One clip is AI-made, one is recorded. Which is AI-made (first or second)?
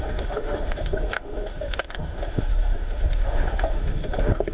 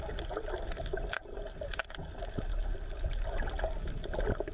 first